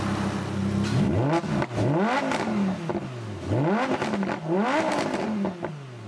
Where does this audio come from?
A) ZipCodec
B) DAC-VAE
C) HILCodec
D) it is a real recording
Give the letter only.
D